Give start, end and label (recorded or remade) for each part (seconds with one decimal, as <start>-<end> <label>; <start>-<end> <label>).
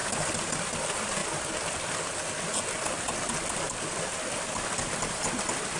0.0-0.5 remade; 0.5-5.8 recorded